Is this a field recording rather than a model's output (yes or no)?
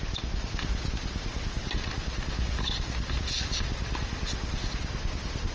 yes